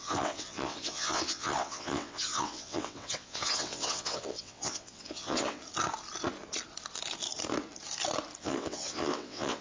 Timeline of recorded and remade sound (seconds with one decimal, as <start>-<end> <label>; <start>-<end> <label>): 0.0-5.6 remade; 5.6-8.4 recorded; 8.4-9.6 remade